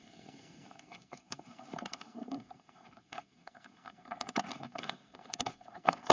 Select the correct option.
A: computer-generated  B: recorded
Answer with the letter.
A